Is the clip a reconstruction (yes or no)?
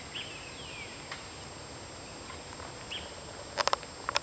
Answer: no